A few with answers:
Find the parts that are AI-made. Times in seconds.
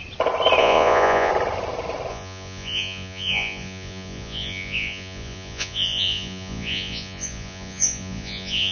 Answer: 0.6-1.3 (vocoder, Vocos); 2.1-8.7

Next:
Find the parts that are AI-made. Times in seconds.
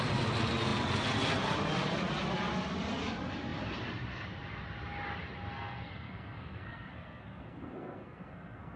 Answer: 5.5-8.8 (codec, SNAC)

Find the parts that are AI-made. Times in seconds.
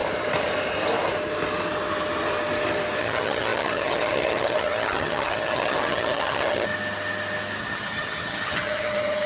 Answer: 3.0-6.7 (vocoder, HiFi-GAN); 7.6-9.3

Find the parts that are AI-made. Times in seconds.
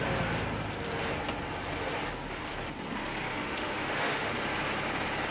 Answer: 3.3-4.3 (autoencoder, DAC-VAE)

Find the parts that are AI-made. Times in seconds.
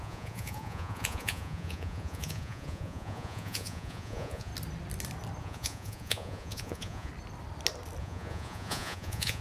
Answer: 0.0-4.5 (vocoder, Vocos); 5.4-7.1; 8.0-9.4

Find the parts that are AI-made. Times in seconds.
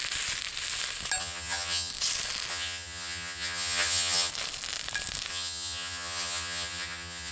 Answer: 1.2-1.9 (vocoder, HiFi-GAN); 2.5-4.3; 5.3-7.3